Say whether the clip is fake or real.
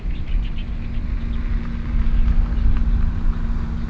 real